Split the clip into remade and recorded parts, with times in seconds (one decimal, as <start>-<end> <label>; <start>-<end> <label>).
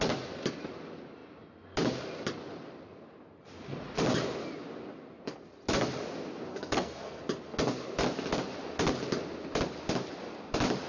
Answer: 0.0-6.5 recorded; 6.5-7.2 remade; 7.2-10.9 recorded